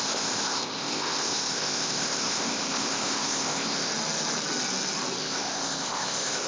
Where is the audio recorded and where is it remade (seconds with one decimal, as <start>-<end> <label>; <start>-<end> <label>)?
0.0-3.9 remade; 3.9-5.2 recorded; 5.2-6.5 remade